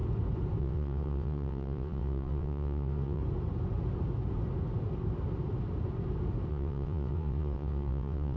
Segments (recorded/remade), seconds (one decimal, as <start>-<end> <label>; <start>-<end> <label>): 0.0-0.6 recorded; 0.6-3.2 remade; 3.2-6.5 recorded; 6.5-8.4 remade